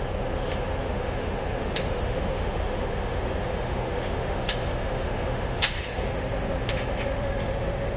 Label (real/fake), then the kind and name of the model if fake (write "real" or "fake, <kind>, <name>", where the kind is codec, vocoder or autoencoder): fake, autoencoder, DAC-VAE